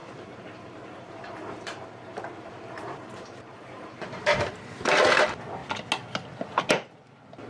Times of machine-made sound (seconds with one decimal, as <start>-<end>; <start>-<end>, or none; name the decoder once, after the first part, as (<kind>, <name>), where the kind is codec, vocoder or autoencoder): 0.0-4.5 (vocoder, BigVGAN v2)